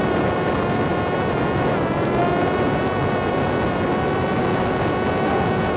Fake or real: real